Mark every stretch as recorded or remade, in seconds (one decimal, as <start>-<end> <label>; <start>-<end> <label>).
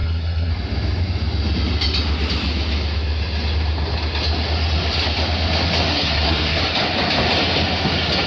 0.0-0.5 remade; 0.5-5.9 recorded; 5.9-6.6 remade; 6.6-8.3 recorded